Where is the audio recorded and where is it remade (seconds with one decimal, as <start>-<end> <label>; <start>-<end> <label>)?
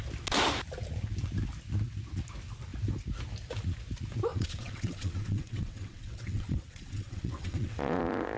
0.0-4.3 recorded; 4.3-8.0 remade; 8.0-8.4 recorded